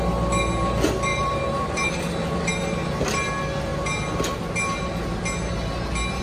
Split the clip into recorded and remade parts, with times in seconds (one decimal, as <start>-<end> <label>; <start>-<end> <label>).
0.0-1.1 recorded; 1.1-2.5 remade; 2.5-6.2 recorded